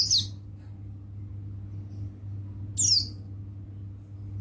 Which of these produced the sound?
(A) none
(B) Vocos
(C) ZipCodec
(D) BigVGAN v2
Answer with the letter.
A